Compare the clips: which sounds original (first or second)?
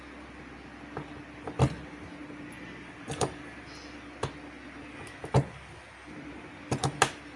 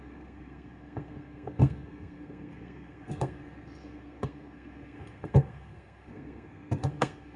first